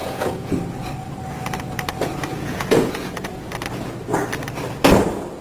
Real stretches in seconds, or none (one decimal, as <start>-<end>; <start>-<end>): 0.5-2.3; 3.4-5.4